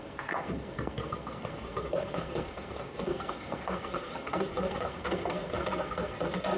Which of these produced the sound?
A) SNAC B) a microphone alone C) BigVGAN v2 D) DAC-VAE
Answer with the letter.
A